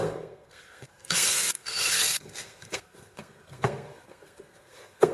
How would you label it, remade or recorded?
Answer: remade